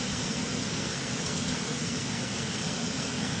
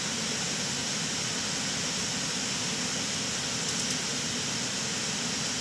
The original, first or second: second